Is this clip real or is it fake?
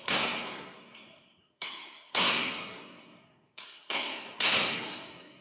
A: fake